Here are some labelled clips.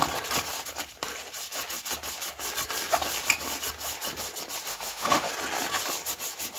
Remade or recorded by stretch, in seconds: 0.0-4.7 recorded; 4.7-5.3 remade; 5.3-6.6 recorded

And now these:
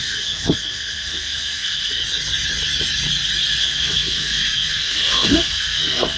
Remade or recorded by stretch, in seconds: 0.0-2.0 remade; 2.0-3.6 recorded; 3.6-6.2 remade

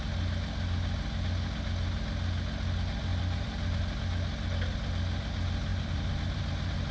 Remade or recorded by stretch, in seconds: 0.0-3.1 recorded; 3.1-3.8 remade; 3.8-5.7 recorded; 5.7-6.4 remade; 6.4-6.9 recorded

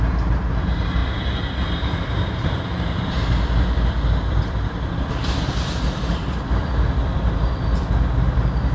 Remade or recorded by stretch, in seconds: 0.0-1.0 remade; 1.0-1.8 recorded; 1.8-8.7 remade

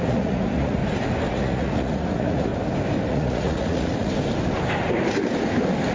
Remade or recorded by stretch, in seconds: 0.0-0.8 remade; 0.8-1.3 recorded; 1.3-2.5 remade; 2.5-3.1 recorded; 3.1-4.1 remade; 4.1-5.9 recorded

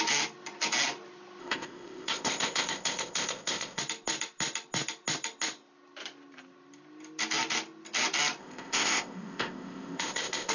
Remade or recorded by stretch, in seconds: 0.0-1.4 recorded; 1.4-3.8 remade; 3.8-8.4 recorded; 8.4-10.5 remade

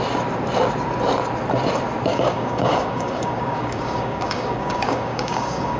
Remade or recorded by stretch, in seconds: 0.0-2.1 recorded; 2.1-5.8 remade

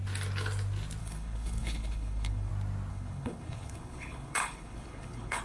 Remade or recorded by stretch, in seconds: 0.0-1.0 recorded; 1.0-2.5 remade; 2.5-2.9 recorded; 2.9-5.4 remade